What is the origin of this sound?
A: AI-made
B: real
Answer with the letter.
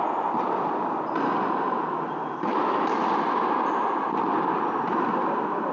B